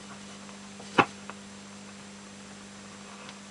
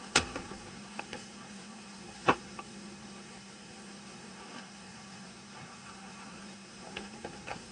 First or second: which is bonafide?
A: first